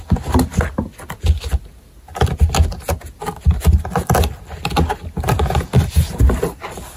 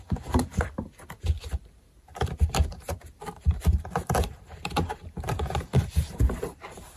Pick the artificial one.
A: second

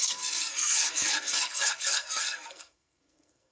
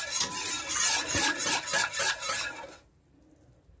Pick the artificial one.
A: first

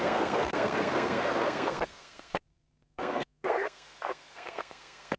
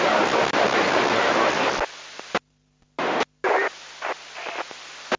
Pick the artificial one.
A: first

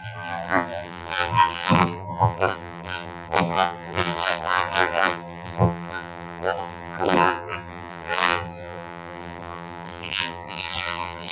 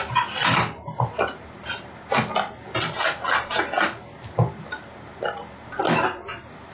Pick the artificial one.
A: first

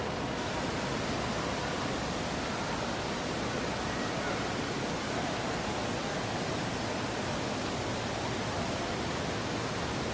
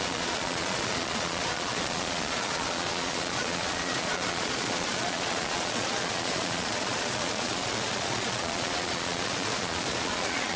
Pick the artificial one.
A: second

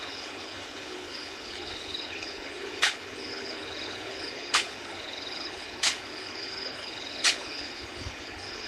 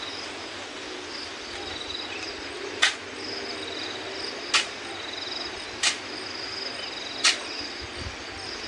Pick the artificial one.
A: first